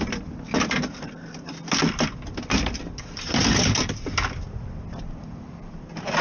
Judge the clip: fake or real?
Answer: real